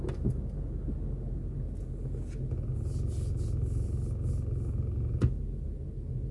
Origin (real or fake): real